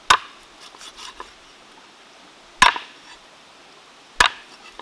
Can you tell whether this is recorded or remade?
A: recorded